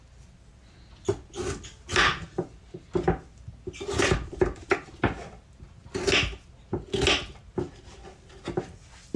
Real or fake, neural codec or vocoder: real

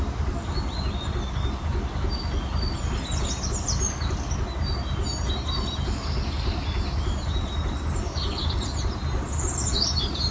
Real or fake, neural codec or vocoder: real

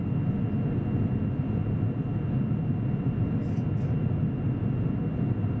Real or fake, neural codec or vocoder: real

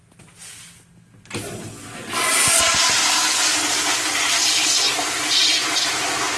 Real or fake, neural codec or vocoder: real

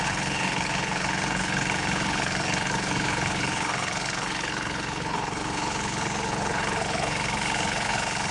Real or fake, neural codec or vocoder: fake, codec, HILCodec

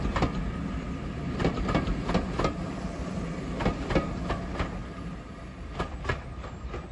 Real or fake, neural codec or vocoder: real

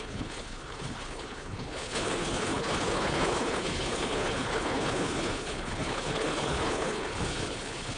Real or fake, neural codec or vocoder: fake, codec, HILCodec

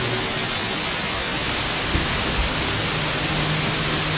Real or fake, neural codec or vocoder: real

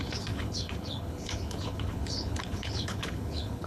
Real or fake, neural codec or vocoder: fake, codec, HILCodec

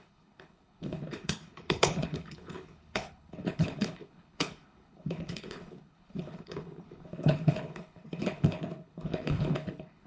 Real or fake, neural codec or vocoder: fake, codec, HILCodec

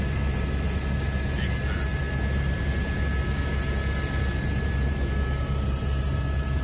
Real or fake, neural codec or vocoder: real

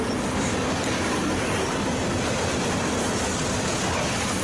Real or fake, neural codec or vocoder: real